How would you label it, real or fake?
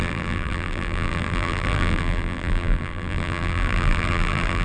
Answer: fake